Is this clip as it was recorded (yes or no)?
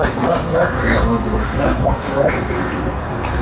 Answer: no